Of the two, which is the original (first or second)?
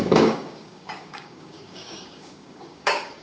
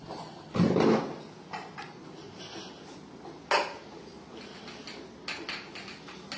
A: second